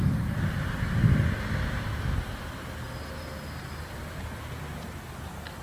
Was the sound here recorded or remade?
recorded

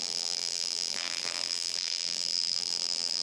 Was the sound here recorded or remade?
remade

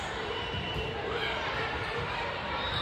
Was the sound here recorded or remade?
remade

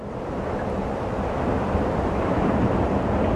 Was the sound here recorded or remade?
remade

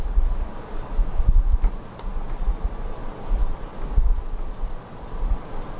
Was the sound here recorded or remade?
recorded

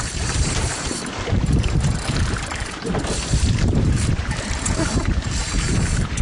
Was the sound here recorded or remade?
remade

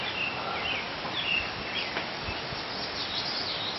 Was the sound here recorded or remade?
recorded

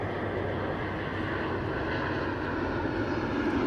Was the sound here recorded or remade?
recorded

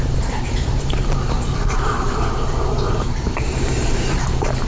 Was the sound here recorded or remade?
remade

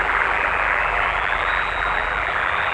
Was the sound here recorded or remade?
remade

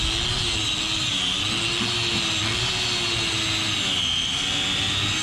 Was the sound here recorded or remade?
recorded